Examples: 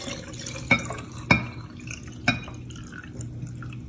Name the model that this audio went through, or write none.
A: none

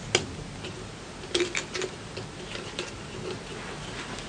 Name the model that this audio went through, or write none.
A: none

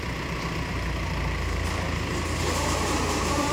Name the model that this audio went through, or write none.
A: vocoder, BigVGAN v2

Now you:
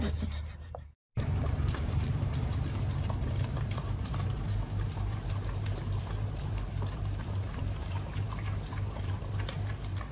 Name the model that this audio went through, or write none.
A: vocoder, BigVGAN v2